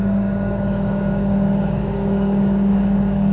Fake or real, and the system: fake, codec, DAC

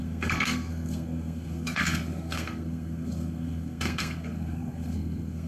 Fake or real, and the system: fake, codec, SNAC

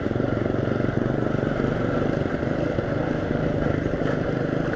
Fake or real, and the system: real